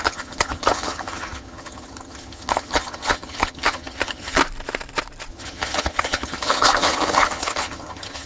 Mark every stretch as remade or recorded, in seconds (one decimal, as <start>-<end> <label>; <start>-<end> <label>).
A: 0.0-4.4 remade; 4.4-5.3 recorded; 5.3-8.3 remade